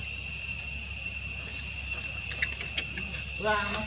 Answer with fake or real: real